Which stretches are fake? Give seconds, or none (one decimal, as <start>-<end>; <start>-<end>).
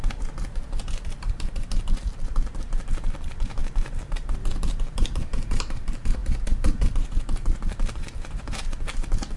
0.0-9.4